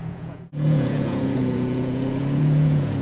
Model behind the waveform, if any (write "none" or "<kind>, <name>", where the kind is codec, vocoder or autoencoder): vocoder, Vocos